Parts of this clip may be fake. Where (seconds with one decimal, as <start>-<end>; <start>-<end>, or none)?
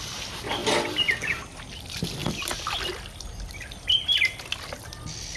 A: none